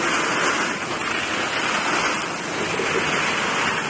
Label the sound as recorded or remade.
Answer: recorded